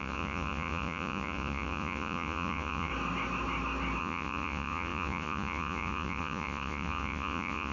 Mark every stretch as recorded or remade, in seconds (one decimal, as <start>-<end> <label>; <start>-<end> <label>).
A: 0.0-2.9 remade; 2.9-4.0 recorded; 4.0-7.7 remade